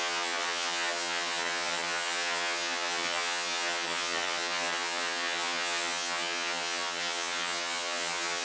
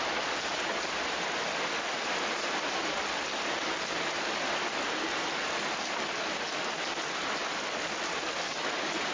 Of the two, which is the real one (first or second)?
second